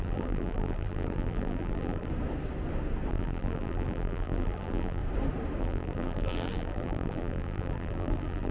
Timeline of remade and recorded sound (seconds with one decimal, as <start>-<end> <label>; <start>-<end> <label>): 0.0-2.1 remade; 2.1-3.1 recorded; 3.1-5.0 remade; 5.0-5.6 recorded; 5.6-8.5 remade